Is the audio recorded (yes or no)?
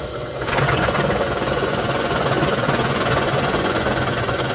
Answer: no